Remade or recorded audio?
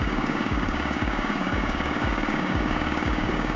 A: remade